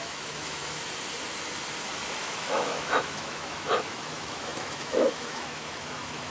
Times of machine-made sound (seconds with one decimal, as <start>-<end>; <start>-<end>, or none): 0.0-0.6; 2.2-6.3